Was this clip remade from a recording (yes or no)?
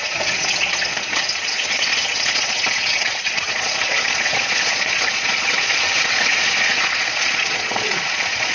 yes